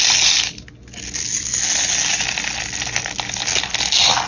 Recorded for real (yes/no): yes